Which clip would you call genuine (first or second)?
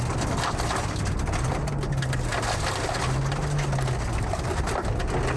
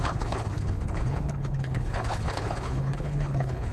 first